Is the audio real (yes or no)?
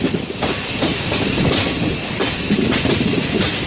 yes